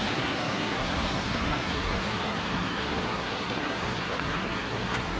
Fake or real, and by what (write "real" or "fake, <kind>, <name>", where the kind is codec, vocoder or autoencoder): fake, codec, SNAC